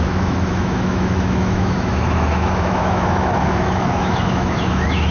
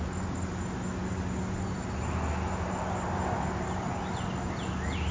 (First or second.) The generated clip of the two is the first